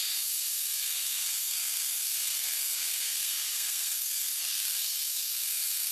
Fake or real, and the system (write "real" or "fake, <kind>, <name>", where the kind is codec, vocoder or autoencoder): fake, codec, SNAC